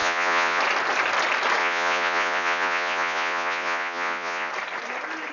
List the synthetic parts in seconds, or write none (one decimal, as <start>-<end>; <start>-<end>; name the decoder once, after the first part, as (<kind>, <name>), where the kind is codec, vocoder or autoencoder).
0.0-0.6 (vocoder, Vocos); 1.6-4.5